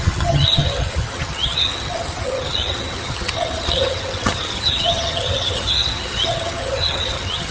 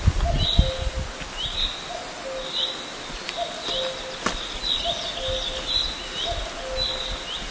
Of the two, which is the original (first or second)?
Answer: second